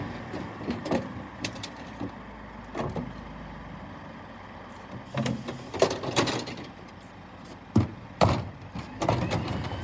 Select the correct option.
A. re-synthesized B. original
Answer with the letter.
B